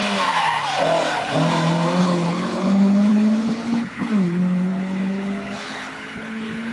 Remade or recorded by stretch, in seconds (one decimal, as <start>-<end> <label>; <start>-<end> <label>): 0.0-2.0 recorded; 2.0-6.7 remade